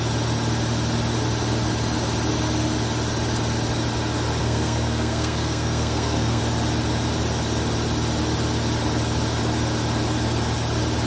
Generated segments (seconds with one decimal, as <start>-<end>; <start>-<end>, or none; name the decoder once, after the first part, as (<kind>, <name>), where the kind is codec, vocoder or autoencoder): 4.4-6.4 (codec, SNAC)